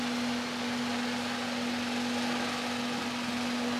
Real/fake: real